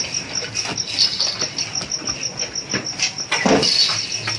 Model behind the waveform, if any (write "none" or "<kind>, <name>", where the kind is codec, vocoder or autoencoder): none